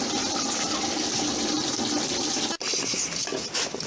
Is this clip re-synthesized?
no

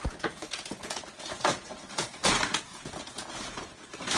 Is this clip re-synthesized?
yes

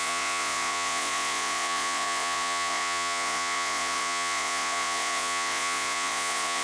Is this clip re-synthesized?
yes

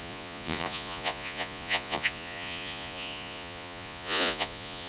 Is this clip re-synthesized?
yes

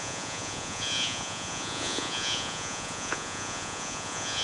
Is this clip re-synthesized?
yes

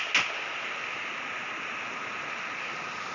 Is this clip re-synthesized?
no